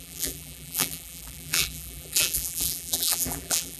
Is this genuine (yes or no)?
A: no